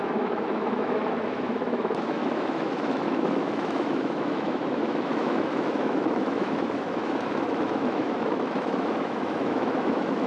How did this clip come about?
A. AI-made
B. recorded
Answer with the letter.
A